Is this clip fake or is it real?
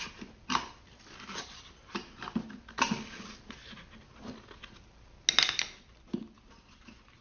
real